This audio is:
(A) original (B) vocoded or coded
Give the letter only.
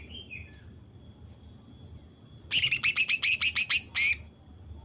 A